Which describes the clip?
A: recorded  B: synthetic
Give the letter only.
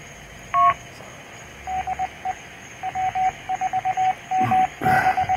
A